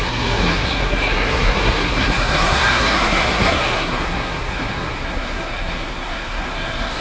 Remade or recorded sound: remade